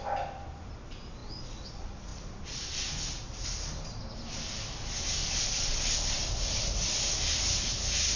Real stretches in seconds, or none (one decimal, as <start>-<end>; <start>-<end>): 2.1-5.1